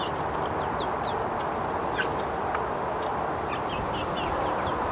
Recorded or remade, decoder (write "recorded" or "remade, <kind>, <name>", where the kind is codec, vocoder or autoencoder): recorded